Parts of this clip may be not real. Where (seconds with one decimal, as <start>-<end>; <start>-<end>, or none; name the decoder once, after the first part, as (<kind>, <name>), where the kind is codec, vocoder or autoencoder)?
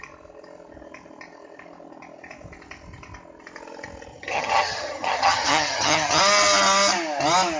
4.1-6.2 (vocoder, HiFi-GAN)